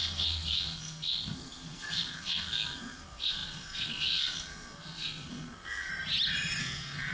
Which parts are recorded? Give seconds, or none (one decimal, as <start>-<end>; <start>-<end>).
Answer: 5.9-6.6